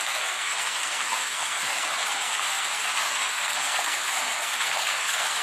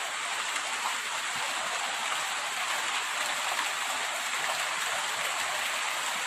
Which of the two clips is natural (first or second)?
second